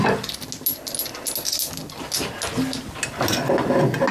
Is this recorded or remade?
recorded